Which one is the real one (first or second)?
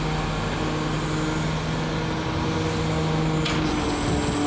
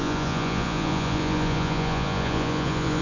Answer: first